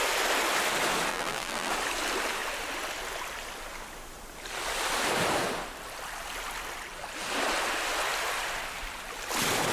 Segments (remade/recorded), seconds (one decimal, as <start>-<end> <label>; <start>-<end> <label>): 0.0-1.1 recorded; 1.1-1.7 remade; 1.7-9.7 recorded